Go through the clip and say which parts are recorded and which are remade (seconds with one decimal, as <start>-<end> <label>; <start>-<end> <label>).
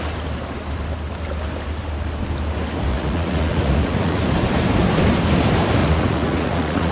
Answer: 0.0-2.9 recorded; 2.9-4.2 remade; 4.2-5.8 recorded; 5.8-6.9 remade